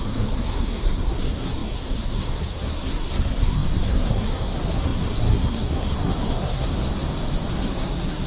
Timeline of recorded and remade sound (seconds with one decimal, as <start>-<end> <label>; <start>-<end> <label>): 0.0-6.8 remade; 6.8-7.6 recorded; 7.6-8.3 remade